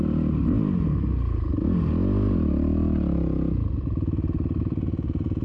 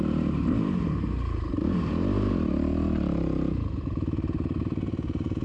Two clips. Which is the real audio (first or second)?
first